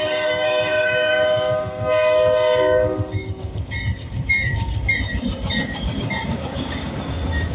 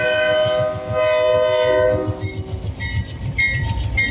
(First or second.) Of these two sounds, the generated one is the first